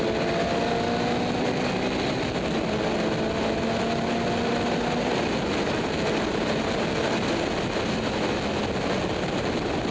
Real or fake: real